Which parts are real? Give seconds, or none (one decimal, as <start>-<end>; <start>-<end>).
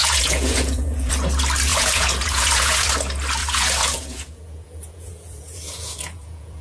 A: 1.1-1.7; 2.9-3.4